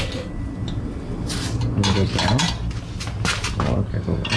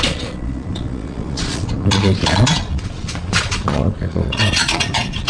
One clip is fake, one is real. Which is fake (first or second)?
second